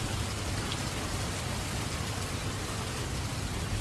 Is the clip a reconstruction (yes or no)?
no